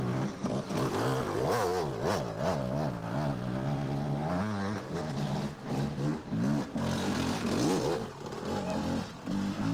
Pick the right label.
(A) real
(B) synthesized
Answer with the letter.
A